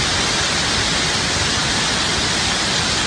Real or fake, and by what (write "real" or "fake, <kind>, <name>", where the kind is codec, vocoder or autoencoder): real